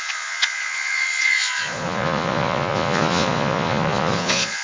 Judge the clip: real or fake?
fake